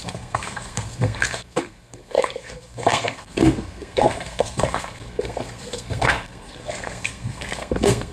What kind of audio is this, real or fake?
fake